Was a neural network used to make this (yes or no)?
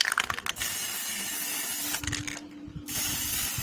no